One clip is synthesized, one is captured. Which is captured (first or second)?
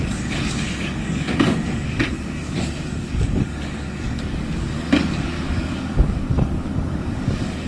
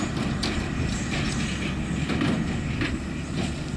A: second